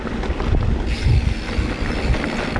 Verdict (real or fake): real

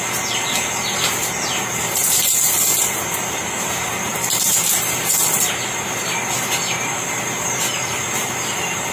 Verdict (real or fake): fake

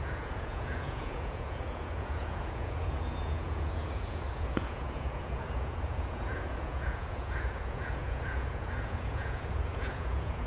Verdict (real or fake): fake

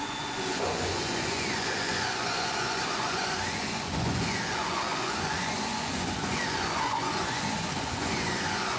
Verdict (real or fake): fake